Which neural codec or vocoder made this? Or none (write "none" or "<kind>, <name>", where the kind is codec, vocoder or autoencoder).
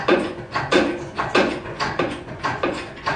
vocoder, Vocos